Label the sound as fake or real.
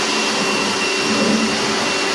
real